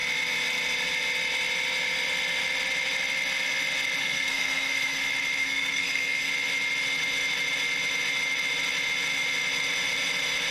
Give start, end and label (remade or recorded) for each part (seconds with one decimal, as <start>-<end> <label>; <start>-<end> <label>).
0.0-4.0 recorded; 4.0-5.0 remade; 5.0-5.4 recorded; 5.4-6.3 remade; 6.3-10.5 recorded